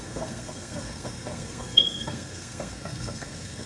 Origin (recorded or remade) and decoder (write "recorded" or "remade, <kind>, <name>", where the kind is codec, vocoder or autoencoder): remade, codec, SNAC